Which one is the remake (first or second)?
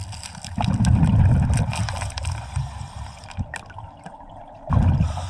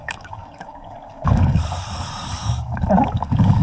second